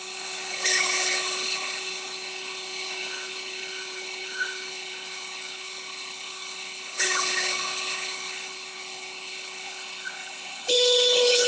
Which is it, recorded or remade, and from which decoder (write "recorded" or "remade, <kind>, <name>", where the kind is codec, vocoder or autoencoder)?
remade, codec, HILCodec